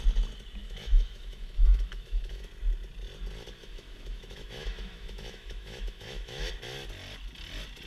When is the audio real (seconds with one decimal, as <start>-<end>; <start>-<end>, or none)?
0.0-0.6; 2.5-3.6; 6.5-7.9